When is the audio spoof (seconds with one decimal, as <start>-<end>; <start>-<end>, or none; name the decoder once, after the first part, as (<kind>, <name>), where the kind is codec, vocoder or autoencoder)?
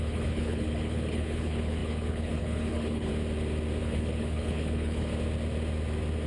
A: 0.0-3.1 (codec, HILCodec); 3.8-5.1